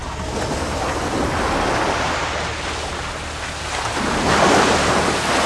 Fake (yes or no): no